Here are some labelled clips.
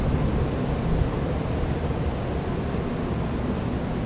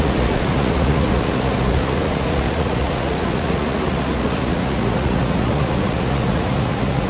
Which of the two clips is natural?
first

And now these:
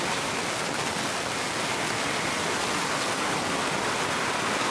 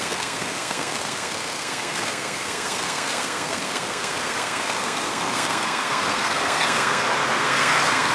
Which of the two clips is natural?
first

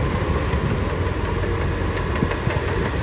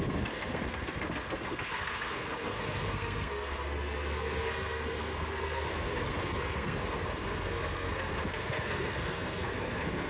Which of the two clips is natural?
first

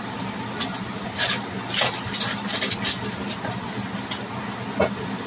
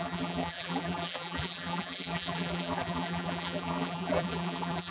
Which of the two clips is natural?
first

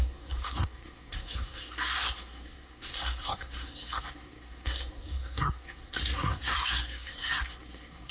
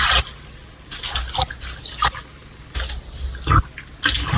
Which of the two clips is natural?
second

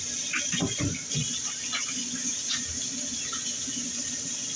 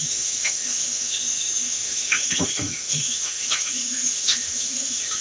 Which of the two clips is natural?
first